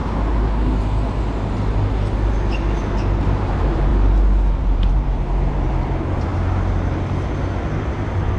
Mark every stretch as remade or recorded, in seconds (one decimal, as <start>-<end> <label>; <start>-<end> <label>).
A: 0.0-3.2 recorded; 3.2-3.9 remade; 3.9-4.5 recorded; 4.5-6.3 remade; 6.3-7.9 recorded; 7.9-8.4 remade